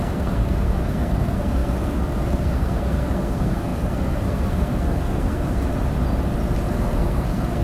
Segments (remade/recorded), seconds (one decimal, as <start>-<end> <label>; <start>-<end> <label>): 0.0-5.7 remade; 5.7-6.7 recorded; 6.7-7.6 remade